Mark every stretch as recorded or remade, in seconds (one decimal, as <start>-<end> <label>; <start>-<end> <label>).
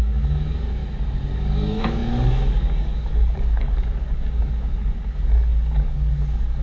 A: 0.0-0.8 remade; 0.8-1.3 recorded; 1.3-6.6 remade